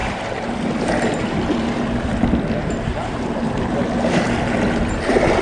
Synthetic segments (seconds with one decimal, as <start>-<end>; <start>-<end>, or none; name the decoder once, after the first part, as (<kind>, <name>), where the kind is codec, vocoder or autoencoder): 0.0-0.5 (vocoder, BigVGAN v2); 2.6-3.7